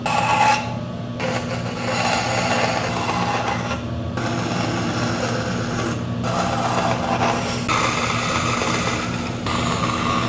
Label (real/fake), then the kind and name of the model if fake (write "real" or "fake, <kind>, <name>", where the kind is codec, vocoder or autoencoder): real